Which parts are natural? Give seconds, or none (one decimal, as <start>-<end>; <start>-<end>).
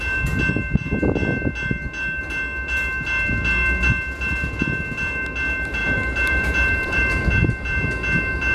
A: 0.0-5.8; 7.4-8.5